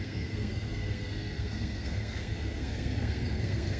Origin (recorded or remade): remade